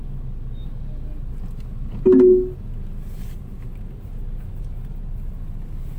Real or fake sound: real